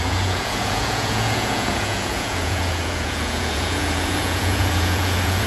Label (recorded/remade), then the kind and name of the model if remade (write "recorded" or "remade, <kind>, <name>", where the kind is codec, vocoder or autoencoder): remade, vocoder, Vocos